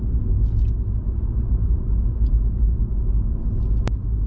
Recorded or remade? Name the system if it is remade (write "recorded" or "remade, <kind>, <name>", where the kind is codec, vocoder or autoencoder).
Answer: recorded